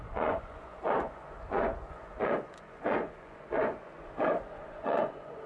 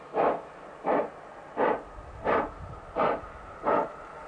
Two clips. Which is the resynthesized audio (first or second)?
first